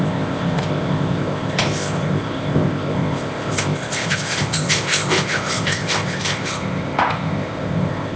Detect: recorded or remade remade